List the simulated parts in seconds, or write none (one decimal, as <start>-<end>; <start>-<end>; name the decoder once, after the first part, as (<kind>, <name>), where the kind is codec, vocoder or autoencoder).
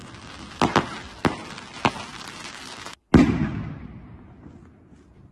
none